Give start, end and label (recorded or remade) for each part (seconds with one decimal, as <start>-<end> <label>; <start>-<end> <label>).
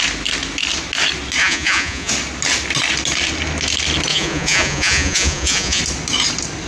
0.0-1.4 recorded; 1.4-2.1 remade; 2.1-4.1 recorded; 4.1-5.8 remade; 5.8-6.7 recorded